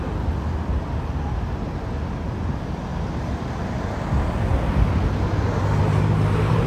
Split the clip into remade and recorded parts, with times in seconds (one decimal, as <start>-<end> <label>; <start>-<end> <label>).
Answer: 0.0-6.7 recorded